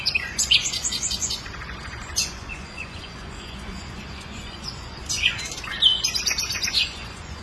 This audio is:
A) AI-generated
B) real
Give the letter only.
A